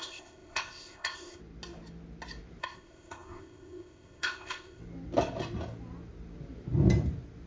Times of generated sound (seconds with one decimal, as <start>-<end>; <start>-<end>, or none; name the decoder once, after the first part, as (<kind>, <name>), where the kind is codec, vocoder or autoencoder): 0.0-1.4 (codec, ZipCodec); 2.6-4.8